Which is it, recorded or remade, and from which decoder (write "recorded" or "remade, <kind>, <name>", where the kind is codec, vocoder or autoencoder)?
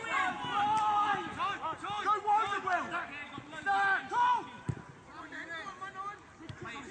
recorded